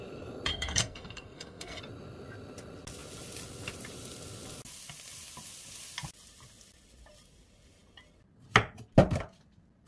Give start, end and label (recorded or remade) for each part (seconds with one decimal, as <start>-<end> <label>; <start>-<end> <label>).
0.0-0.5 recorded; 0.5-1.8 remade; 1.8-9.9 recorded